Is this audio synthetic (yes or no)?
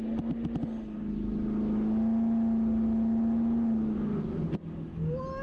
no